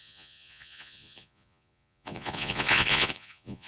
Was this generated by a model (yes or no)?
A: yes